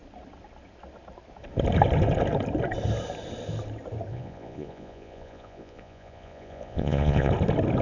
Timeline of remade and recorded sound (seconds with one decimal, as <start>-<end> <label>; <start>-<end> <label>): 0.0-4.1 recorded; 4.1-7.3 remade; 7.3-7.8 recorded